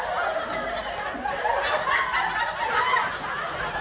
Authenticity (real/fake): real